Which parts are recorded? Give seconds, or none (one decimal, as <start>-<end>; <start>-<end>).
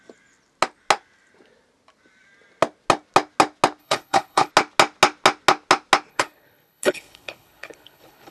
0.0-3.8; 4.5-6.1